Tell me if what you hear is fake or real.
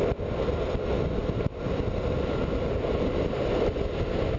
real